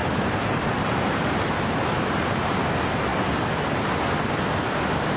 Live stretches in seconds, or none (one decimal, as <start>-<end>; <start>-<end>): 3.1-5.2